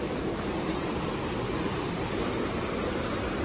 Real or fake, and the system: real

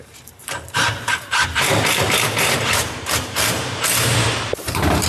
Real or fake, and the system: fake, vocoder, BigVGAN v2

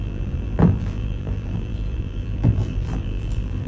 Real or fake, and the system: fake, vocoder, BigVGAN v2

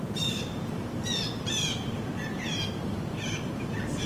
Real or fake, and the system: fake, vocoder, BigVGAN v2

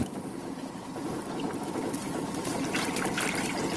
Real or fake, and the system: real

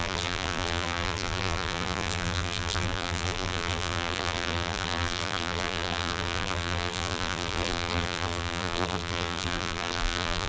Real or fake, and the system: fake, vocoder, BigVGAN v2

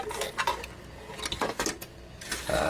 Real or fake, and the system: real